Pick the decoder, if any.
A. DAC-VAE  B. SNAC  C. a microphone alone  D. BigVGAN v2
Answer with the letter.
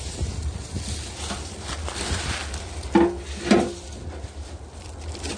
C